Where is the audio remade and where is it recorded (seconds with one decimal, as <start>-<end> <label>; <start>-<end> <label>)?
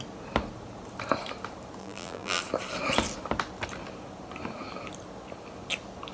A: 0.0-1.8 recorded; 1.8-2.4 remade; 2.4-6.1 recorded